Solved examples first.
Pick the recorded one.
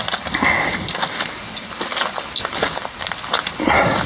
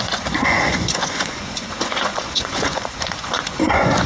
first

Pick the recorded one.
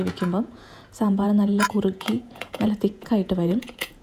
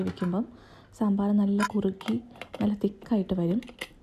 second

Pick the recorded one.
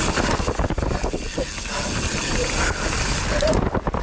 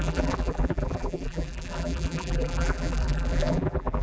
first